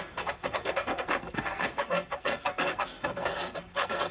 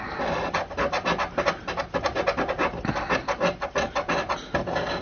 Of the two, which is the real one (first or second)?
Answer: second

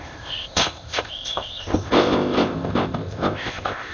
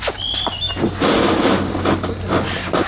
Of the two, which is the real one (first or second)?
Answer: second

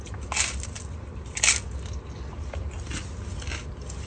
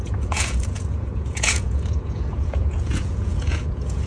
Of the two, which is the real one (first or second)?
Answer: first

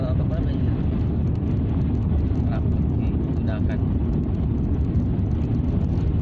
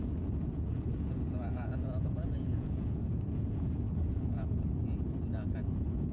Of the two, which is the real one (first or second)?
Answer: first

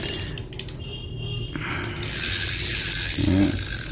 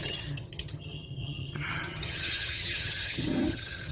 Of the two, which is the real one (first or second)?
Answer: first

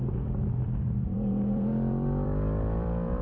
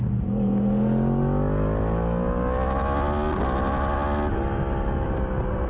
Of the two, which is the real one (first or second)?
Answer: second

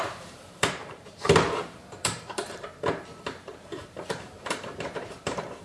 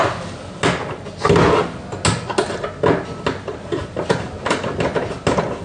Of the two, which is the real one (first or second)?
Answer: second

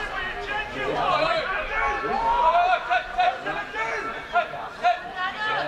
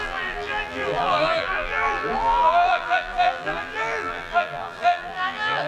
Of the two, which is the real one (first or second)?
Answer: first